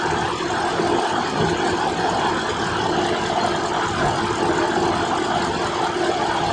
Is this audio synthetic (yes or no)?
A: no